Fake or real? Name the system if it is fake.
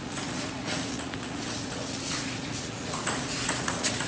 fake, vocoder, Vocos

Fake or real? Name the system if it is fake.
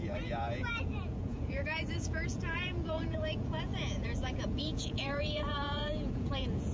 fake, vocoder, Vocos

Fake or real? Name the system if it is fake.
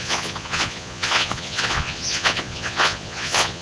fake, vocoder, Vocos